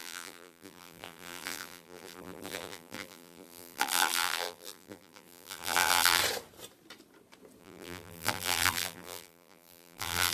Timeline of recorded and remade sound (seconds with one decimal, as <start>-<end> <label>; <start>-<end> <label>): 0.0-6.2 remade; 6.2-7.6 recorded; 7.6-10.3 remade

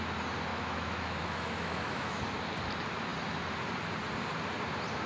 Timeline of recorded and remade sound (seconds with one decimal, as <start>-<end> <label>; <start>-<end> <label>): 0.0-0.5 recorded; 0.5-2.2 remade; 2.2-5.1 recorded

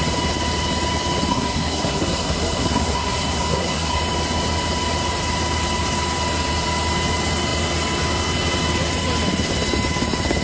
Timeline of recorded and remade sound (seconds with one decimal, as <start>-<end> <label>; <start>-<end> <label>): 0.0-1.3 recorded; 1.3-4.0 remade; 4.0-10.4 recorded